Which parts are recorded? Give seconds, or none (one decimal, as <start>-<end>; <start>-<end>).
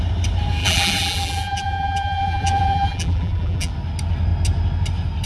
0.0-0.6; 3.7-5.3